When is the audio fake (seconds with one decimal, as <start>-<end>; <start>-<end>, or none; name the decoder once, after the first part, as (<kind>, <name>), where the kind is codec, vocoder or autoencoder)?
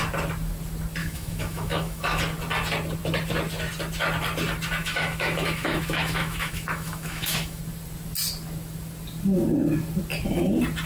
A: 1.0-2.2 (autoencoder, DAC-VAE); 4.8-7.6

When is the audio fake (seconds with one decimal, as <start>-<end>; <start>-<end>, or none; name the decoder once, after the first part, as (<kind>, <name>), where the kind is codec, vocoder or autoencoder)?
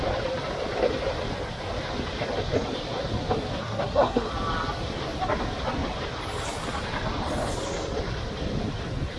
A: 3.6-4.3 (codec, SNAC)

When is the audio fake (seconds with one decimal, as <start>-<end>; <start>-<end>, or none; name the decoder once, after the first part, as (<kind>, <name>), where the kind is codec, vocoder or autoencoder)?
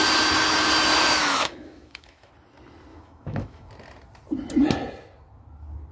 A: 1.2-2.3 (autoencoder, DAC-VAE); 2.9-3.7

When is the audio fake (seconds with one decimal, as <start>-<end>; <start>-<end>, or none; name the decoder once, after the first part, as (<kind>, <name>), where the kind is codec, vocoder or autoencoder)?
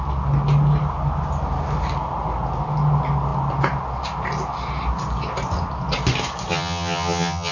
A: 6.5-7.5 (vocoder, HiFi-GAN)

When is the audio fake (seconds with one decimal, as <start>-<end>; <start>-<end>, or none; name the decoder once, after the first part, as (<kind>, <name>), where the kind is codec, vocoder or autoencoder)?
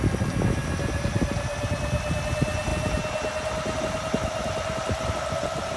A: none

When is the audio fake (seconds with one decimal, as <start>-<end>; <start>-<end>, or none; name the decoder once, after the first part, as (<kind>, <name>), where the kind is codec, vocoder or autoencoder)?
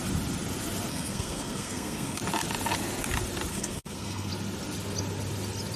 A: 0.9-2.2 (codec, SNAC); 3.5-4.3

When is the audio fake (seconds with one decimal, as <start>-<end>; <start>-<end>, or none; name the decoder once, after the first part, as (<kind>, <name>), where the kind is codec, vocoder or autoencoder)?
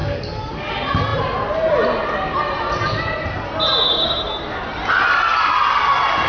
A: 0.0-0.7 (codec, DAC)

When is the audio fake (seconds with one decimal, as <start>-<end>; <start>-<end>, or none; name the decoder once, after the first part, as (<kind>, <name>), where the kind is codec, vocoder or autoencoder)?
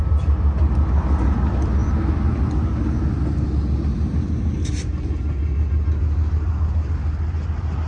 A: none